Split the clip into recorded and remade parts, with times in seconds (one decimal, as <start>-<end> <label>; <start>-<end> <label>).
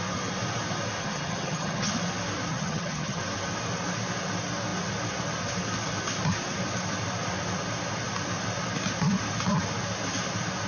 0.0-1.0 recorded; 1.0-1.9 remade; 1.9-2.5 recorded; 2.5-3.2 remade; 3.2-10.7 recorded